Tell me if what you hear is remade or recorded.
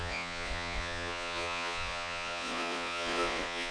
remade